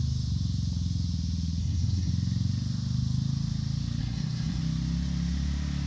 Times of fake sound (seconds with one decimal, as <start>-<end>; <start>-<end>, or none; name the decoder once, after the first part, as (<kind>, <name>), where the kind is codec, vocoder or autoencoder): 1.6-2.1 (codec, SNAC); 4.0-4.6